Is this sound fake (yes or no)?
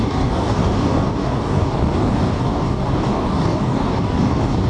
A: yes